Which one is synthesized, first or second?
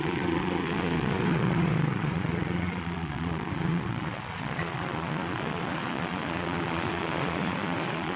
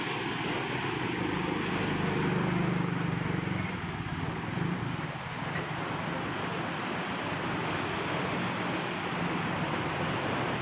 first